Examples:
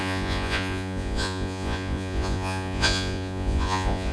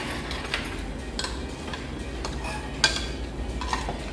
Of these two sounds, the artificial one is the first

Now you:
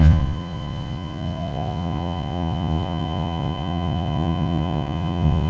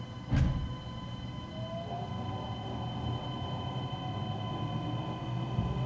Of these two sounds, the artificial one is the first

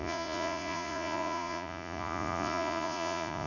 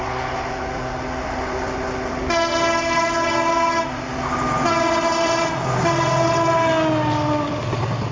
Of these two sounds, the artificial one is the first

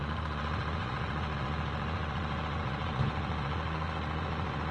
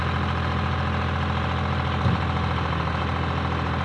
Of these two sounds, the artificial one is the first